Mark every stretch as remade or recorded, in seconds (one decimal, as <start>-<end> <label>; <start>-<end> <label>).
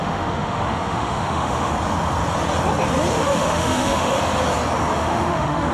0.0-1.7 remade; 1.7-3.1 recorded; 3.1-4.2 remade; 4.2-5.0 recorded; 5.0-5.7 remade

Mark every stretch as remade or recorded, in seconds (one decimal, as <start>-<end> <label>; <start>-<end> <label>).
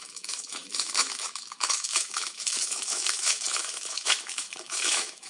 0.0-5.3 remade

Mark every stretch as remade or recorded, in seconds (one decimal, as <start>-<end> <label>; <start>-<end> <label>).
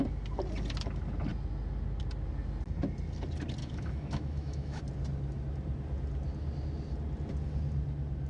0.0-3.6 recorded; 3.6-4.8 remade; 4.8-8.3 recorded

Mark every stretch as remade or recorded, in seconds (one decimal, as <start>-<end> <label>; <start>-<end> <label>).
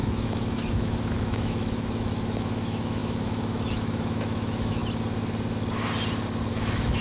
0.0-4.8 remade; 4.8-6.5 recorded; 6.5-7.0 remade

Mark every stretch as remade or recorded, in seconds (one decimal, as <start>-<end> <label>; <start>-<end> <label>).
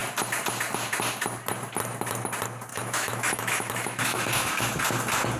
0.0-2.7 recorded; 2.7-4.6 remade; 4.6-5.4 recorded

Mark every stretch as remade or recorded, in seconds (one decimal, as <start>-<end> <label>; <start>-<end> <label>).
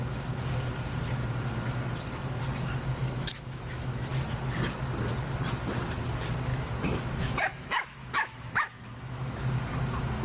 0.0-3.0 recorded; 3.0-4.1 remade; 4.1-6.5 recorded; 6.5-9.4 remade; 9.4-10.2 recorded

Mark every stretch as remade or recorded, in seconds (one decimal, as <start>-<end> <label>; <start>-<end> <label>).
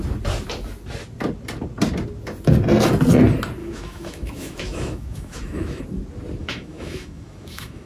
0.0-3.6 recorded; 3.6-5.8 remade; 5.8-6.4 recorded; 6.4-7.9 remade